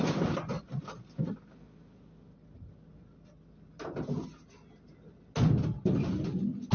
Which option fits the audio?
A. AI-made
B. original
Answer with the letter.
B